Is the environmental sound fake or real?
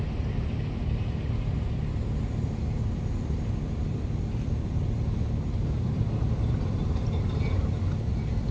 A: real